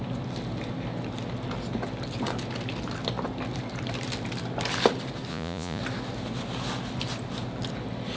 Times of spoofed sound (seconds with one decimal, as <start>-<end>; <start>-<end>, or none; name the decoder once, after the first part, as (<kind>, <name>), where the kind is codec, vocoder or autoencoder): 5.3-5.8 (vocoder, Vocos)